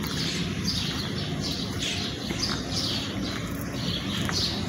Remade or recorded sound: recorded